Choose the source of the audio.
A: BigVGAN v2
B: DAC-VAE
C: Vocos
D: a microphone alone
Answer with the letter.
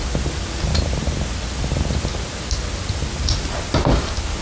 D